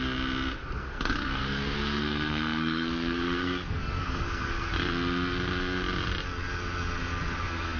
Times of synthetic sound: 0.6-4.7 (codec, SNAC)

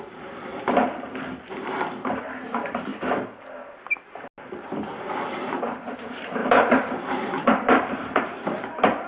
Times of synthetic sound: 0.0-0.5 (vocoder, BigVGAN v2); 1.5-2.9; 5.4-9.1

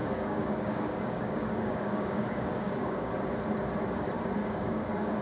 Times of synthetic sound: 0.0-3.1 (codec, DAC); 4.4-5.2